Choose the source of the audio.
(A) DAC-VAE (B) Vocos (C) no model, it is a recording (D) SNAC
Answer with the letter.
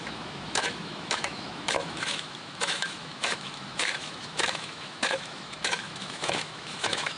A